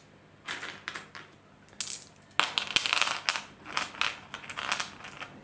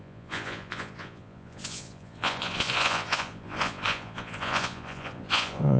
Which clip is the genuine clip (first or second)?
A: first